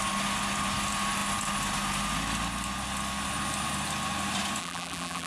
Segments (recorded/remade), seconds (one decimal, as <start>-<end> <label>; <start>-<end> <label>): 0.0-4.6 recorded; 4.6-5.3 remade